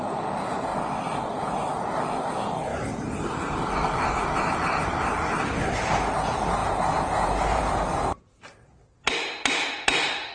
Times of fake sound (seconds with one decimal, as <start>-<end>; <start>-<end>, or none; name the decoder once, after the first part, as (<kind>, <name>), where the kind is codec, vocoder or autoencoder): 6.6-8.2 (vocoder, BigVGAN v2)